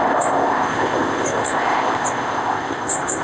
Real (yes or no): no